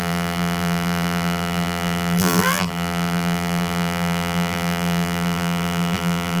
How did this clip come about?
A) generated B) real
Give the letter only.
A